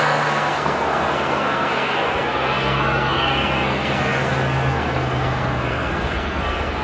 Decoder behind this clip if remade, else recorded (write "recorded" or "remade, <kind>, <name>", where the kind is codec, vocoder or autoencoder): remade, codec, SNAC